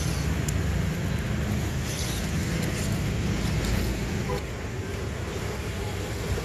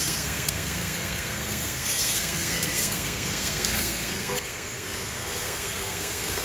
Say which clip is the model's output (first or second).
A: second